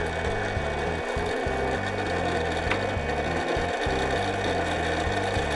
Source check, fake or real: real